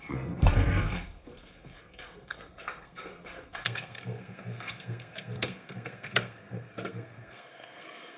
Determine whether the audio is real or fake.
fake